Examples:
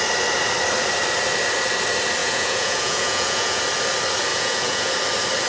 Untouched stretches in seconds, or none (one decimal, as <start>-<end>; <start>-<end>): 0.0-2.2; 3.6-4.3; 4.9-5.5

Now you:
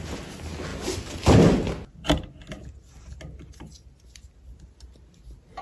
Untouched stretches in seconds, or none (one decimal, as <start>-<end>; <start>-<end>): 0.0-5.6

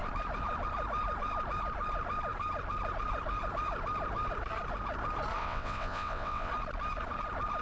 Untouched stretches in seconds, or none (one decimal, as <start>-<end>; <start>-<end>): 0.0-5.4; 6.5-7.6

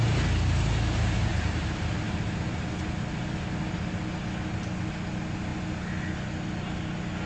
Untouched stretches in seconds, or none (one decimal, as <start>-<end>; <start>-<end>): 0.0-1.3; 1.9-7.3

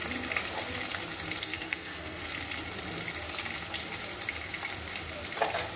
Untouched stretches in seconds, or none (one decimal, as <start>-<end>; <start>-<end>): 0.0-1.4; 2.2-5.8